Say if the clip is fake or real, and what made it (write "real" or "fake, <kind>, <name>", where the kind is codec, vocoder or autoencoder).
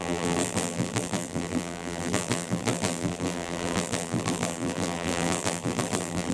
fake, vocoder, BigVGAN v2